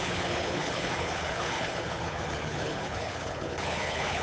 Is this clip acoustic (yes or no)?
no